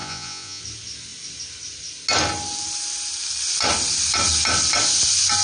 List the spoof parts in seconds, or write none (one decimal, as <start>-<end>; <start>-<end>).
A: 0.0-0.6